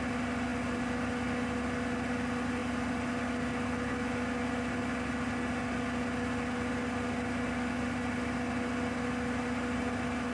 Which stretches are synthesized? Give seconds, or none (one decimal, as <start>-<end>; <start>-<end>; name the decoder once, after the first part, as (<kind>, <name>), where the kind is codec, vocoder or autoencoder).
none